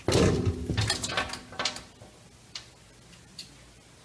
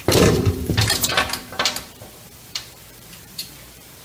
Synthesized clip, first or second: second